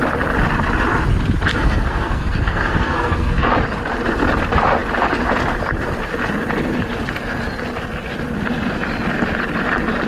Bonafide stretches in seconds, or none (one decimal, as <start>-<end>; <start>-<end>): 0.0-1.5; 3.5-10.1